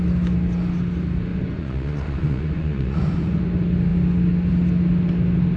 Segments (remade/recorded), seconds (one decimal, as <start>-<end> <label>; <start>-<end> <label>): 0.0-1.3 recorded; 1.3-3.4 remade; 3.4-5.6 recorded